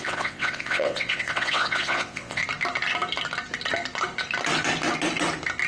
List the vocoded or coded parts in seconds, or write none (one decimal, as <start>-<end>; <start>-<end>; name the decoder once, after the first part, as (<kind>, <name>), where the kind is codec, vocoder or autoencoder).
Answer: 0.0-2.4 (vocoder, WaveNeXt)